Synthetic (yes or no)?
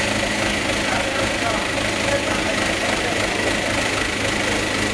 no